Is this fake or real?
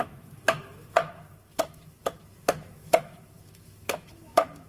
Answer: fake